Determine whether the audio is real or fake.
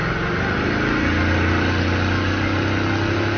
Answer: real